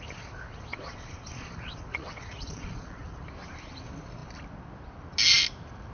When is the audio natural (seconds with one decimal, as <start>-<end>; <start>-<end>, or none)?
0.0-0.7; 3.2-5.9